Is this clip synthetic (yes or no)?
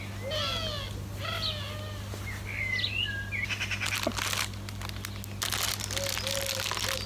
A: no